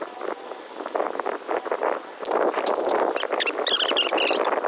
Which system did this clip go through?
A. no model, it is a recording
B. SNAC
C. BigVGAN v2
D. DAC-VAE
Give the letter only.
A